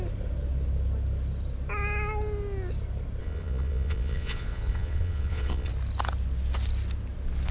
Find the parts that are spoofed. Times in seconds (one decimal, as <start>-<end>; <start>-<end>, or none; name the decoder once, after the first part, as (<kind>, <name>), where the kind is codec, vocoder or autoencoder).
3.2-5.7 (vocoder, Vocos)